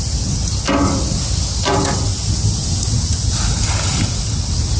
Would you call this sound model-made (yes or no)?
no